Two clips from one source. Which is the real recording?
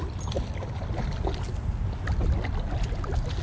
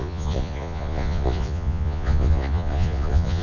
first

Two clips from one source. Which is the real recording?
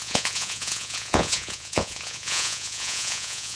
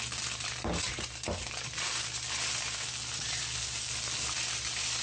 second